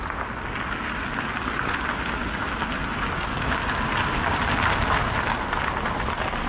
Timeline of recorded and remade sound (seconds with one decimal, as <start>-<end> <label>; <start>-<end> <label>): 0.0-6.5 recorded